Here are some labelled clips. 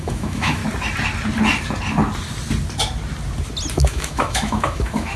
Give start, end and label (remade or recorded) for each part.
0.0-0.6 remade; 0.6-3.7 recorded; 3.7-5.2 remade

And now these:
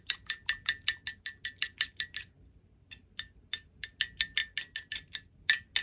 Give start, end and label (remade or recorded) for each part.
0.0-5.8 recorded

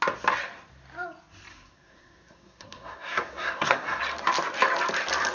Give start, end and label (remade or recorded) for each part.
0.0-1.5 recorded; 1.5-4.0 remade; 4.0-5.3 recorded

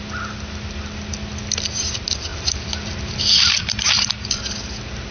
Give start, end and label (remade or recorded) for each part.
0.0-5.1 recorded

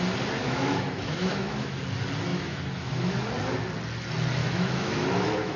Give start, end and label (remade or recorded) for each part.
0.0-0.4 recorded; 0.4-1.8 remade; 1.8-2.3 recorded; 2.3-3.3 remade; 3.3-4.4 recorded; 4.4-5.6 remade

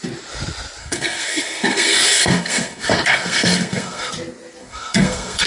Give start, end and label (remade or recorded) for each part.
0.0-0.8 recorded; 0.8-4.1 remade; 4.1-4.6 recorded; 4.6-5.5 remade

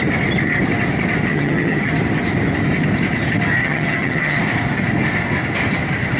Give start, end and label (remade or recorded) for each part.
0.0-1.3 recorded; 1.3-1.9 remade; 1.9-3.6 recorded; 3.6-4.4 remade; 4.4-6.2 recorded